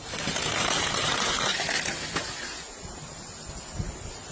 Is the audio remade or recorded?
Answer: recorded